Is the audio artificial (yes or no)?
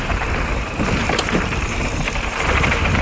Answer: yes